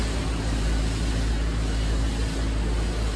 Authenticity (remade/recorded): recorded